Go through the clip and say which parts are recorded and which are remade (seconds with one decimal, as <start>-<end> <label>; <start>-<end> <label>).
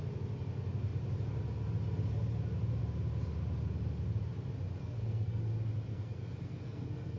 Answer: 0.0-4.8 recorded; 4.8-5.4 remade; 5.4-5.9 recorded; 5.9-7.2 remade